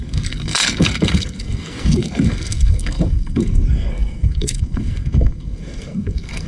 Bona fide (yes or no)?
no